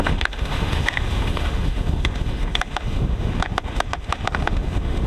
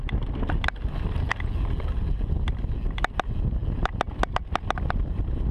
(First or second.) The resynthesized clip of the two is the first